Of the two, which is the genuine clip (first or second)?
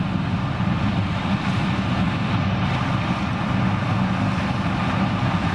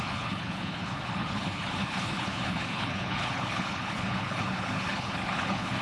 first